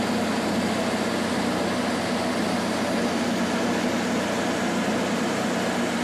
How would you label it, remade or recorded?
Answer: recorded